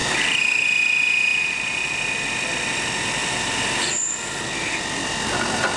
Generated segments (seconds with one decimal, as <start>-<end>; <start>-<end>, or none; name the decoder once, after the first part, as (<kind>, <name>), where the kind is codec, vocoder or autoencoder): none